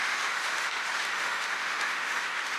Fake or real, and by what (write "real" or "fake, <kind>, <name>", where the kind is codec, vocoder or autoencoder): fake, autoencoder, DAC-VAE